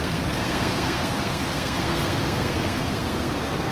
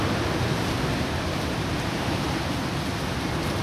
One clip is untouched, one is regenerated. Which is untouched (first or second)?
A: second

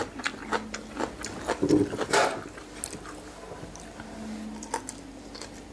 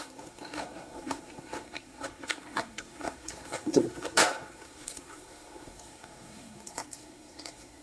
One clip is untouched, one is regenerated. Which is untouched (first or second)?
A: first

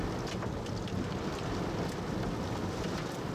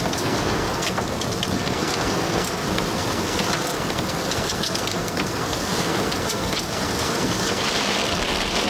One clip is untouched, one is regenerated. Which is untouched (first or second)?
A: first